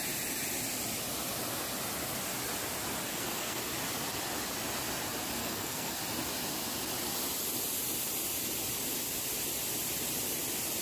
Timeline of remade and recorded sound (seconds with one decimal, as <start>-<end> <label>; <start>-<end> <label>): 0.0-3.1 recorded; 3.1-3.6 remade; 3.6-5.4 recorded; 5.4-6.0 remade; 6.0-10.8 recorded